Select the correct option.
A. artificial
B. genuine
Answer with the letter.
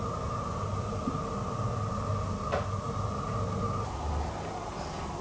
B